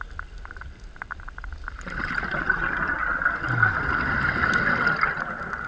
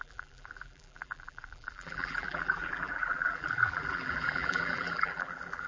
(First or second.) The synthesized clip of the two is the second